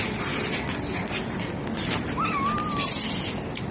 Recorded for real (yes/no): yes